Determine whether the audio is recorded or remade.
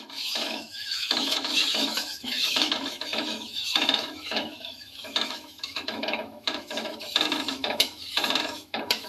remade